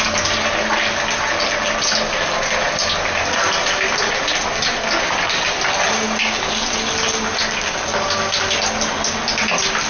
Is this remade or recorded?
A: recorded